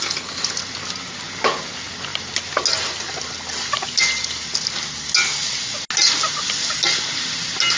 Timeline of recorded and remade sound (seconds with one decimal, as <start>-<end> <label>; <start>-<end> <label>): 0.0-7.8 recorded